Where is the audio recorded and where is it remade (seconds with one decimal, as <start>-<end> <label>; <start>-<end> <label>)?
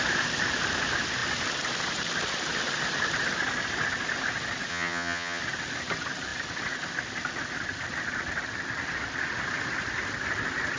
0.0-4.7 recorded; 4.7-5.4 remade; 5.4-10.8 recorded